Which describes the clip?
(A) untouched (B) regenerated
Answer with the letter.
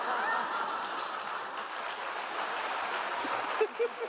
A